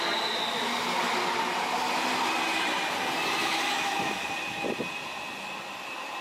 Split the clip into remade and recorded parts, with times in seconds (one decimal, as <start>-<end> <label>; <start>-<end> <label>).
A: 0.0-3.4 recorded; 3.4-4.2 remade; 4.2-6.2 recorded